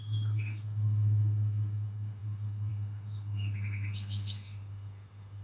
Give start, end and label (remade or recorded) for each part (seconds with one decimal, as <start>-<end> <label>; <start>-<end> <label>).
0.0-5.4 remade